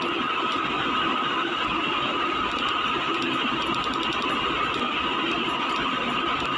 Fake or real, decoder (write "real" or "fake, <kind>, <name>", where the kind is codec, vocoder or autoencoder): real